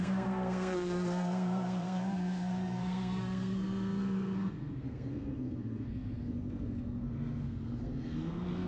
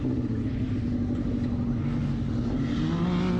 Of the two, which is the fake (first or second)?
first